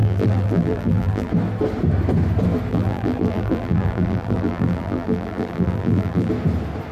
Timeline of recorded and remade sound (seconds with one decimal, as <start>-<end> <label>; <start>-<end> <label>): 0.0-1.3 remade; 1.3-2.7 recorded; 2.7-6.3 remade; 6.3-6.9 recorded